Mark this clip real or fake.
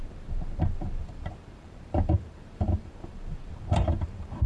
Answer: fake